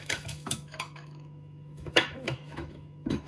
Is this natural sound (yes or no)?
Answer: no